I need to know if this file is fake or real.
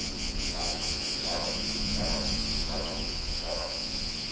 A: fake